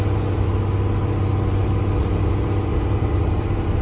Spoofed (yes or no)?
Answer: no